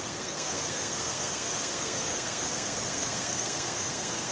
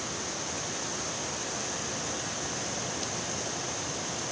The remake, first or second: first